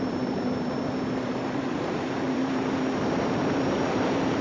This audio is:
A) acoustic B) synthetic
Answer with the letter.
B